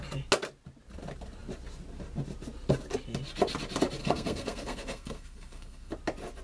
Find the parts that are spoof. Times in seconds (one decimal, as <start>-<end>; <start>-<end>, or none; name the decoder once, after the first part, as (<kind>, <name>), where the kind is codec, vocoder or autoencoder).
4.0-5.9 (codec, SNAC)